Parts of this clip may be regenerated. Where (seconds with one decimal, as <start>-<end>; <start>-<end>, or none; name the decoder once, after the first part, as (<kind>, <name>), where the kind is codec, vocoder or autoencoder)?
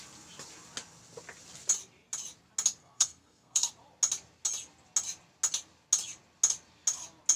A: 2.8-3.7 (codec, SNAC)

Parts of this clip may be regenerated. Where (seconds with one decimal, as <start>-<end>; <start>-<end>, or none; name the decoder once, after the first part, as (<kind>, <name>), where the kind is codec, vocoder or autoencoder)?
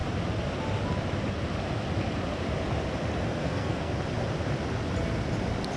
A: 3.4-3.9 (codec, SNAC)